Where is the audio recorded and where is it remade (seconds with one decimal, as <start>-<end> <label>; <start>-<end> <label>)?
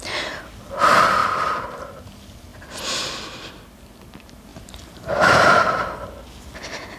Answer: 0.0-1.2 recorded; 1.2-1.9 remade; 1.9-4.5 recorded; 4.5-5.9 remade; 5.9-7.0 recorded